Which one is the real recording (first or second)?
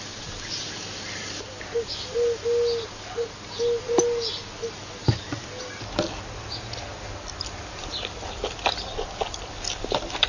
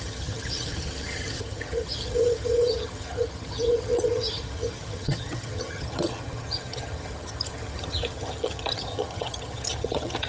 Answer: first